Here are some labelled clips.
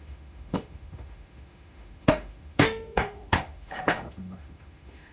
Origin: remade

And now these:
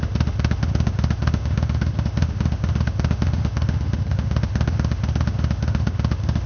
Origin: remade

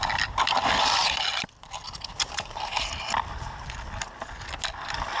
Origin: recorded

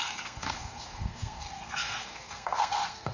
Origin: remade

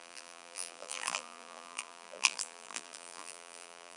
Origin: remade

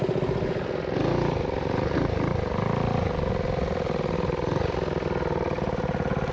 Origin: recorded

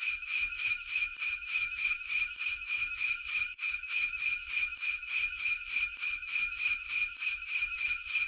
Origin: remade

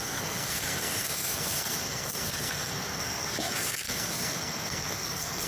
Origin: remade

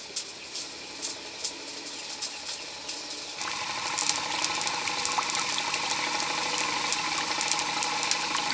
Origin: recorded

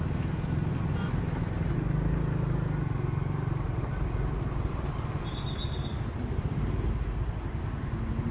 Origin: recorded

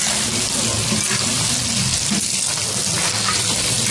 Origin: recorded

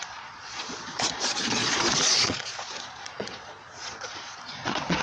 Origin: remade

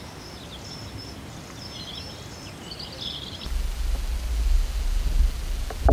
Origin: recorded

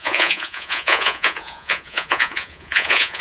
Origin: remade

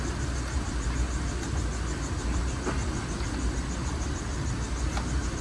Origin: recorded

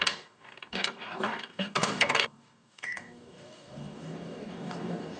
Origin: remade